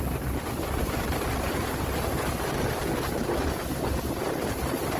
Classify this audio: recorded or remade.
recorded